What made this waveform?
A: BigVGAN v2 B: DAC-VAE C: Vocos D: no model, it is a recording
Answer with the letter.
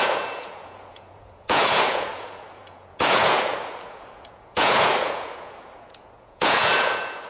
C